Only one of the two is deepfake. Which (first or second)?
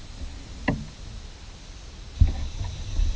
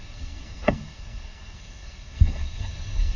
second